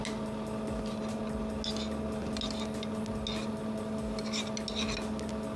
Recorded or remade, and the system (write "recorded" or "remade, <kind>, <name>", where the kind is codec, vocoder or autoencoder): recorded